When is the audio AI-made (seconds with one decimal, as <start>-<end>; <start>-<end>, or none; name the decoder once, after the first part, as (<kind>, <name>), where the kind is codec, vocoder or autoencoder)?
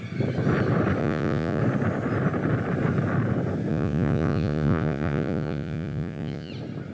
1.0-1.6 (vocoder, Vocos); 3.7-6.5